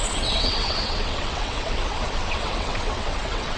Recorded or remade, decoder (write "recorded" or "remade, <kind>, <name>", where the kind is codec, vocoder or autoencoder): remade, vocoder, WaveNeXt